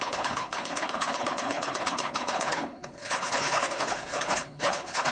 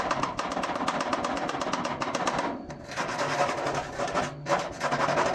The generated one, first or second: first